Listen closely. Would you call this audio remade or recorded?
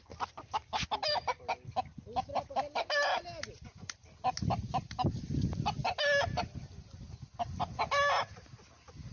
recorded